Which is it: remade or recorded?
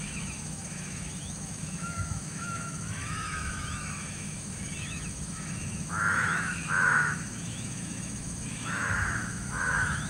remade